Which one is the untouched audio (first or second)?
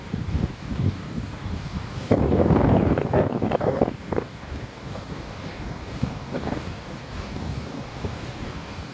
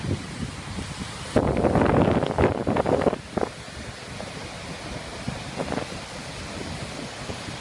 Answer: second